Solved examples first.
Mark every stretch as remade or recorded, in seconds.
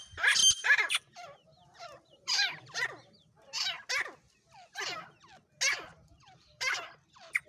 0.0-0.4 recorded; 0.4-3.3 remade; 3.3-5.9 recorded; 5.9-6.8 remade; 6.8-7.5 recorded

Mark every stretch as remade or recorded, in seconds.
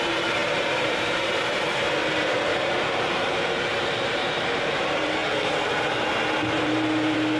0.0-5.2 remade; 5.2-6.4 recorded; 6.4-7.4 remade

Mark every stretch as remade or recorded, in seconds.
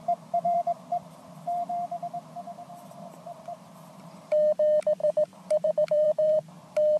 0.0-4.2 remade; 4.2-5.0 recorded; 5.0-6.5 remade; 6.5-7.0 recorded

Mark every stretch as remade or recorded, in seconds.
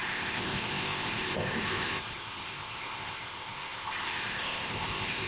0.0-5.3 remade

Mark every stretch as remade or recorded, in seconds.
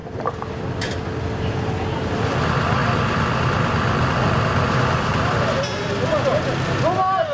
0.0-7.3 recorded